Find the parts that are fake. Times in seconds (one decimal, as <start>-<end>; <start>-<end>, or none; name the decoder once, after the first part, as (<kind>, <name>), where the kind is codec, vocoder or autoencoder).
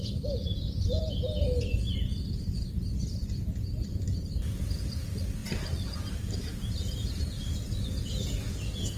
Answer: 5.4-7.4 (vocoder, BigVGAN v2)